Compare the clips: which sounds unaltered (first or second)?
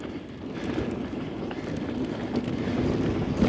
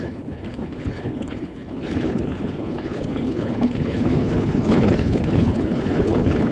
first